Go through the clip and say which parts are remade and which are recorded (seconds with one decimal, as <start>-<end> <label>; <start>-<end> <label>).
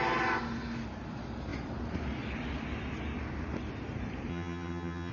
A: 0.0-4.3 recorded; 4.3-5.1 remade